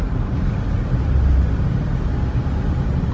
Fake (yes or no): no